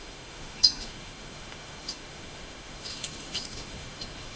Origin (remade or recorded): remade